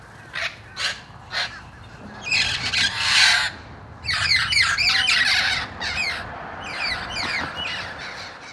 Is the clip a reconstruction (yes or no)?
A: no